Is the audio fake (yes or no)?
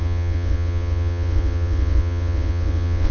yes